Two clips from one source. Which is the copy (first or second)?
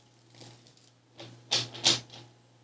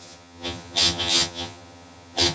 second